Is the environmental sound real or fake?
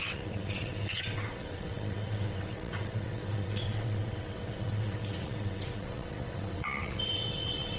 fake